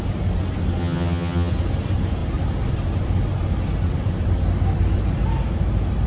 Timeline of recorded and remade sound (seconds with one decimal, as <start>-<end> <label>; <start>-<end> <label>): 0.0-0.8 recorded; 0.8-1.5 remade; 1.5-6.1 recorded